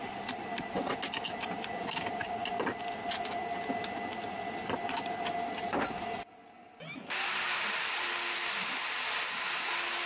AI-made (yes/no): no